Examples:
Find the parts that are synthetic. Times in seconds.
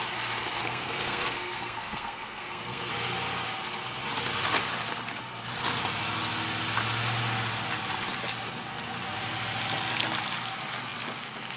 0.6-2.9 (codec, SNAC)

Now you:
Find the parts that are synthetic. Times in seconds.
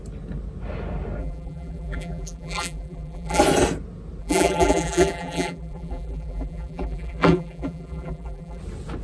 1.2-3.4 (vocoder, BigVGAN v2); 4.2-8.6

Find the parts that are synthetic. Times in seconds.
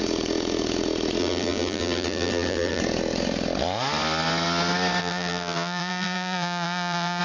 1.2-2.8 (vocoder, BigVGAN v2); 5.0-7.2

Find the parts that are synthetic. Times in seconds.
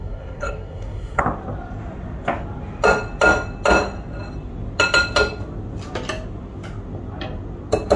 0.0-1.2 (codec, SNAC)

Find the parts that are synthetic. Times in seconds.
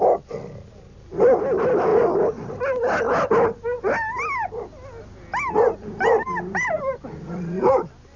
none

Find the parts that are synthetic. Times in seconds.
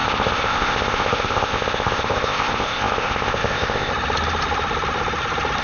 0.0-3.9 (codec, ZipCodec)